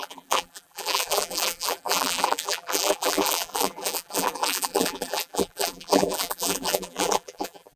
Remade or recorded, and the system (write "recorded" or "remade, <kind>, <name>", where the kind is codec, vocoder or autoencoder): remade, vocoder, BigVGAN v2